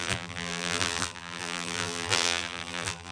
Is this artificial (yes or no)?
yes